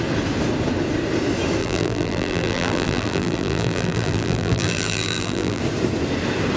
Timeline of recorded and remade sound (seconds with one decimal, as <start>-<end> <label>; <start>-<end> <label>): 0.0-1.6 recorded; 1.6-5.6 remade; 5.6-6.6 recorded